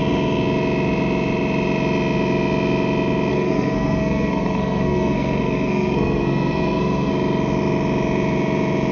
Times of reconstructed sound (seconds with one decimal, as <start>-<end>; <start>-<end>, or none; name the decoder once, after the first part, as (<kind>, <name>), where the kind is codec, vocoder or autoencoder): 3.3-7.1 (codec, SNAC)